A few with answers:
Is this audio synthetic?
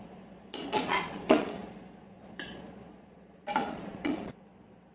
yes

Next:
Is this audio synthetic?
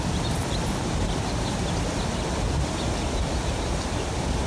no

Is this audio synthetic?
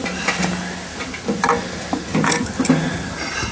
no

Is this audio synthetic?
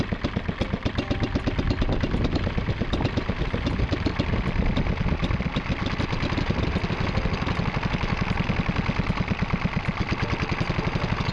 no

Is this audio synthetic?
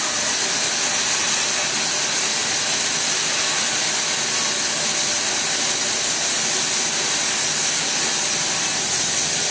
no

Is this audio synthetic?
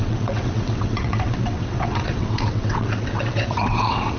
yes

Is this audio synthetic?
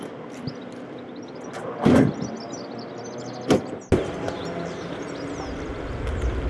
no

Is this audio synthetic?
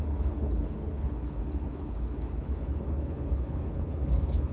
yes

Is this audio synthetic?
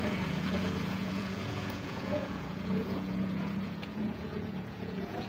yes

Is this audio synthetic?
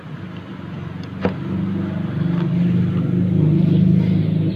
no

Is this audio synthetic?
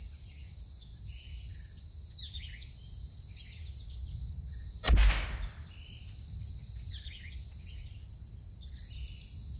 no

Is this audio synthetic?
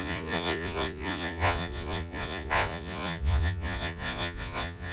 yes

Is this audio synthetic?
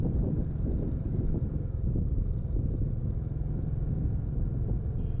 no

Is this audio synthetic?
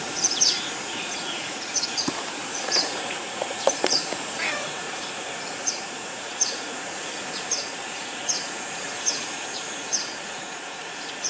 yes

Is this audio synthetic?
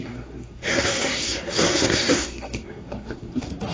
yes